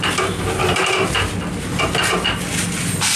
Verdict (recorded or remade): recorded